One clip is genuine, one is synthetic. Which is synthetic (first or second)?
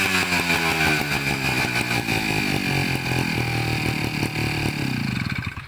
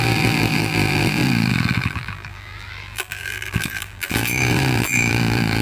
second